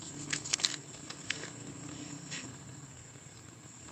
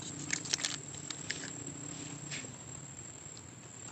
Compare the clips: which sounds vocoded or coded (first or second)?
first